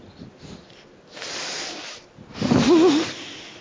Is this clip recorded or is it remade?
recorded